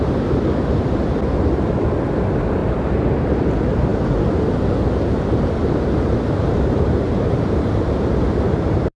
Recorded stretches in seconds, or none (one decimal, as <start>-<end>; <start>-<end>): 0.0-5.6